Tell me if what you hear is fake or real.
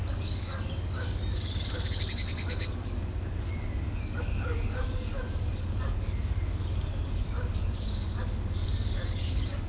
fake